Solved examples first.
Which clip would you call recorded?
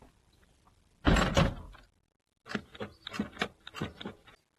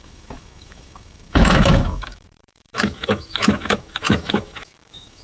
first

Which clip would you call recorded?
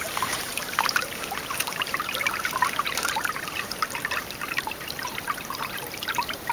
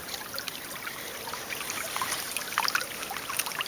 second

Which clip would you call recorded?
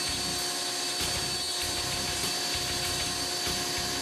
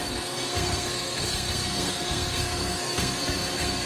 first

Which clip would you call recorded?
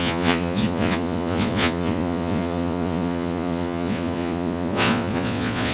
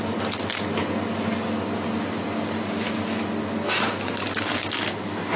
second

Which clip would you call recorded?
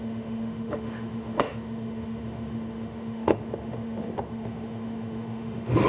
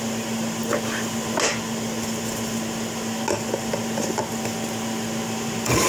second